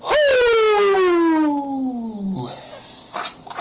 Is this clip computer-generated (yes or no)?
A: no